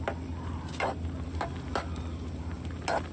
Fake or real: real